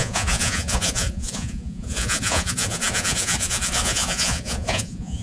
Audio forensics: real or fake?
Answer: fake